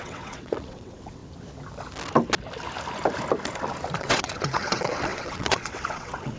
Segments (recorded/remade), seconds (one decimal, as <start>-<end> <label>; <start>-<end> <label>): 0.0-1.2 remade; 1.2-4.0 recorded; 4.0-6.4 remade

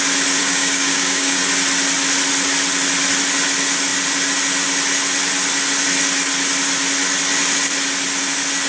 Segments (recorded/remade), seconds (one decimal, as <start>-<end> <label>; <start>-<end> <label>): 0.0-0.4 recorded; 0.4-1.4 remade; 1.4-8.7 recorded

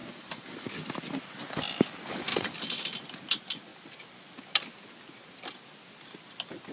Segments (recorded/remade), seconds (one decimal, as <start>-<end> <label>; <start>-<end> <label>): 0.0-0.7 remade; 0.7-2.3 recorded; 2.3-2.8 remade; 2.8-6.7 recorded

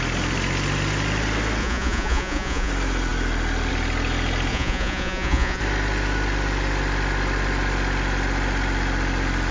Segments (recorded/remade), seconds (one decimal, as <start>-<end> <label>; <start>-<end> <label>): 0.0-1.6 recorded; 1.6-2.7 remade; 2.7-4.5 recorded; 4.5-5.6 remade; 5.6-9.5 recorded

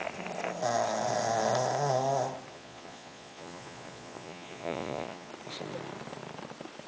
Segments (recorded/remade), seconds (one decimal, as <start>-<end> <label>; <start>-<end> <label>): 0.0-2.5 recorded; 2.5-5.3 remade; 5.3-6.9 recorded

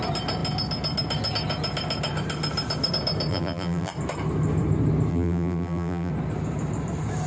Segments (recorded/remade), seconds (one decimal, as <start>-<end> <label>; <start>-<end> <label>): 0.0-3.3 recorded; 3.3-3.9 remade; 3.9-5.1 recorded; 5.1-6.1 remade; 6.1-7.3 recorded

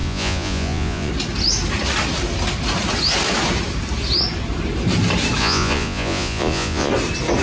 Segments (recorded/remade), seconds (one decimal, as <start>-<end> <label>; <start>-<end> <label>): 0.0-1.1 remade; 1.1-5.4 recorded; 5.4-6.9 remade; 6.9-7.4 recorded